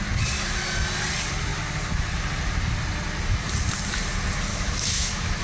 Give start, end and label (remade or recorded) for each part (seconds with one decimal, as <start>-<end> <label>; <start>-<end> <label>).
0.0-4.5 recorded; 4.5-5.4 remade